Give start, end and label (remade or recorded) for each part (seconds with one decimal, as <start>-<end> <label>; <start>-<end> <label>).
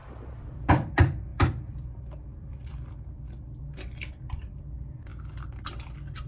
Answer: 0.0-5.1 remade; 5.1-6.3 recorded